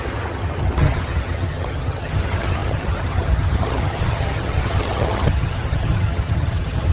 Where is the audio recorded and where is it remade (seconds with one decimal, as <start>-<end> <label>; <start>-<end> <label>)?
0.0-6.9 remade